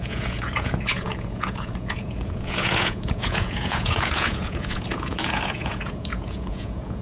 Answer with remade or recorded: remade